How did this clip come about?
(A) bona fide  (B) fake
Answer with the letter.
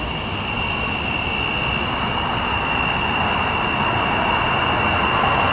A